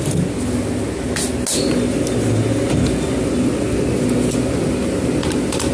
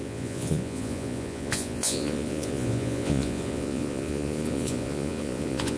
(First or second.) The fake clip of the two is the second